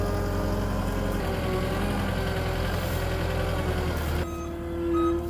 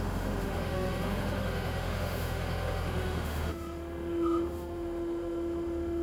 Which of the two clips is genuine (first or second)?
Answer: first